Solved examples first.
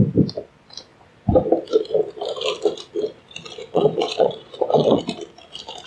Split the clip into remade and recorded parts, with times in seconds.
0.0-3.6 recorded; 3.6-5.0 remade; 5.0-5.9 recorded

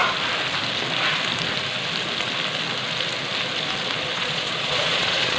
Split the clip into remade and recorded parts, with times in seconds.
0.0-4.1 recorded; 4.1-5.4 remade

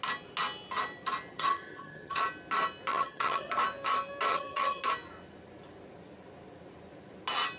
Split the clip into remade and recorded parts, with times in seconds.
0.0-1.3 recorded; 1.3-2.2 remade; 2.2-2.9 recorded; 2.9-3.5 remade; 3.5-4.3 recorded; 4.3-4.8 remade; 4.8-7.6 recorded

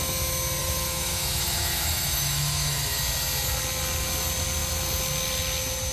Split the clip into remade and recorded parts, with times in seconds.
0.0-0.6 recorded; 0.6-3.0 remade; 3.0-5.9 recorded

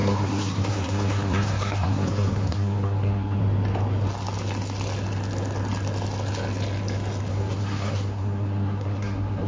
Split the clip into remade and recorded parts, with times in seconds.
0.0-3.4 remade; 3.4-7.3 recorded; 7.3-9.5 remade

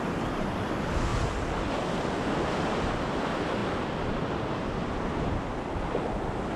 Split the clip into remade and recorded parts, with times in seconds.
0.0-6.6 recorded

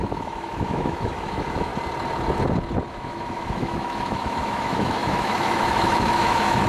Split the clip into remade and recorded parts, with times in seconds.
0.0-1.7 remade; 1.7-2.9 recorded; 2.9-6.7 remade

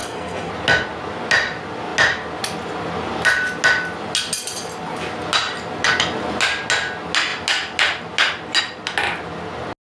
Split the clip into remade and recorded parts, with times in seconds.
0.0-0.5 remade; 0.5-9.8 recorded